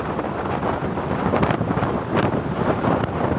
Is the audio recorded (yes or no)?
no